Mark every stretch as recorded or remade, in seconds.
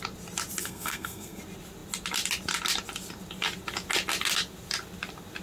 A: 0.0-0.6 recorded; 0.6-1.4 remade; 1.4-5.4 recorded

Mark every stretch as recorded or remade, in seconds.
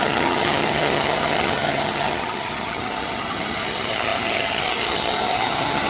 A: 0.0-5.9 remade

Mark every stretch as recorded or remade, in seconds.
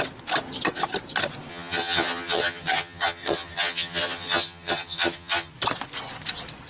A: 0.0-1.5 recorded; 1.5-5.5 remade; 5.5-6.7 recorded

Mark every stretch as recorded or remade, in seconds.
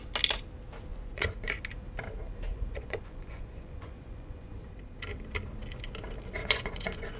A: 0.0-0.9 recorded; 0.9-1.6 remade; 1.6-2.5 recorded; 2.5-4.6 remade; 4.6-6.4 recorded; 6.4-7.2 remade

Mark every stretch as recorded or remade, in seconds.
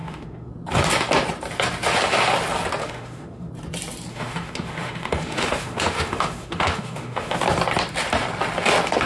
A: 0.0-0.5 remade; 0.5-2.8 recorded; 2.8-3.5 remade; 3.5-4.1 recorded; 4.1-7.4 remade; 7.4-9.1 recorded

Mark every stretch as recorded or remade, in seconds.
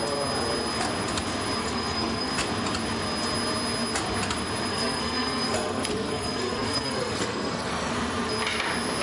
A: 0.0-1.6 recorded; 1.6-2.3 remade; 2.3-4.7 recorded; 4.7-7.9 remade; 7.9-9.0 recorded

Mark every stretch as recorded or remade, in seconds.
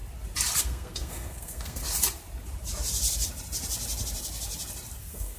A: 0.0-0.6 recorded; 0.6-1.8 remade; 1.8-5.0 recorded; 5.0-5.4 remade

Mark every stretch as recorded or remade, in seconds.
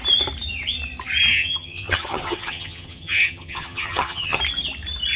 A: 0.0-1.3 recorded; 1.3-4.4 remade; 4.4-5.2 recorded